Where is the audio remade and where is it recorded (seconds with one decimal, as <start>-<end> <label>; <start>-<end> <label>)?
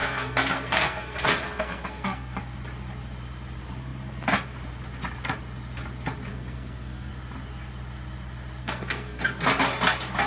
0.0-2.4 remade; 2.4-6.3 recorded; 6.3-7.1 remade; 7.1-8.6 recorded; 8.6-9.2 remade; 9.2-10.3 recorded